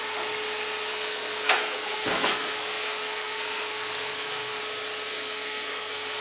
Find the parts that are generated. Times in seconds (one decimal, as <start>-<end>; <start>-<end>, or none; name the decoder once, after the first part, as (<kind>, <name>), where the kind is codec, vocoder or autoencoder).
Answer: 0.9-4.6 (codec, SNAC); 5.1-6.2